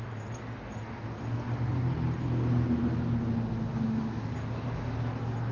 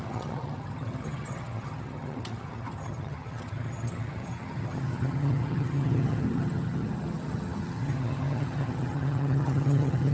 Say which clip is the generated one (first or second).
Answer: second